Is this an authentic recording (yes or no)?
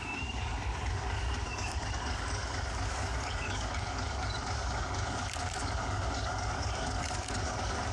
no